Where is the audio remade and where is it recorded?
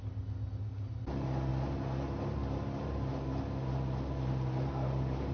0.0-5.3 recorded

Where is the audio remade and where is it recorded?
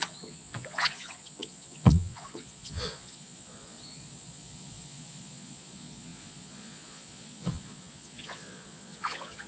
0.0-9.5 remade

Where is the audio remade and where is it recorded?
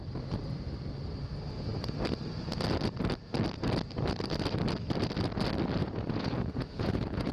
0.0-5.8 recorded; 5.8-7.3 remade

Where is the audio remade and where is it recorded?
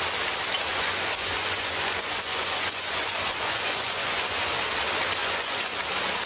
0.0-0.7 recorded; 0.7-4.5 remade; 4.5-5.2 recorded; 5.2-5.8 remade; 5.8-6.3 recorded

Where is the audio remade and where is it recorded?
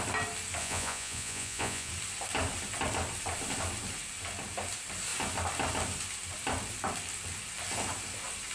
0.0-0.6 recorded; 0.6-1.9 remade; 1.9-8.5 recorded